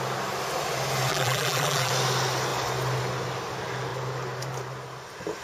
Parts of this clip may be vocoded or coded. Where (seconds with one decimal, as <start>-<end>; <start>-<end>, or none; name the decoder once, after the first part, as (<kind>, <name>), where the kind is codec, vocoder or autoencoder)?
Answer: 1.1-1.9 (vocoder, BigVGAN v2)